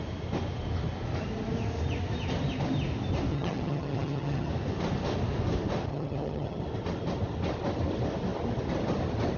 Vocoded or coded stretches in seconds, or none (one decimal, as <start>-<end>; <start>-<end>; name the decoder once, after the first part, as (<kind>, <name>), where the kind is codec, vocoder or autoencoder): 3.3-4.5 (vocoder, HiFi-GAN); 5.9-6.6

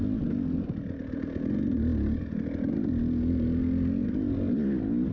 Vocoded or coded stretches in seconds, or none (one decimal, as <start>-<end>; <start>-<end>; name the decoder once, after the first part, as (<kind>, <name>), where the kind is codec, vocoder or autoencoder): none